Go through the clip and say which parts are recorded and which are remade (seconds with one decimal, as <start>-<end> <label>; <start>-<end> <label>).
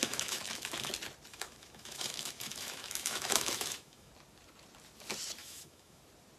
0.0-0.9 remade; 0.9-1.3 recorded; 1.3-4.1 remade; 4.1-5.4 recorded; 5.4-6.0 remade; 6.0-6.4 recorded